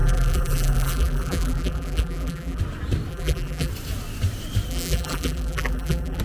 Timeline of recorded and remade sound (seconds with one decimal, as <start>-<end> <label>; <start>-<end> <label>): 0.0-2.6 remade; 2.6-3.1 recorded; 3.1-3.7 remade; 3.7-4.7 recorded; 4.7-6.2 remade